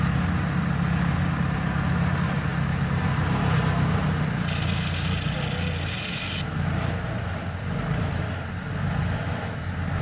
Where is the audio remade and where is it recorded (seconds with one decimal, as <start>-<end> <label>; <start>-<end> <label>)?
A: 0.0-10.0 recorded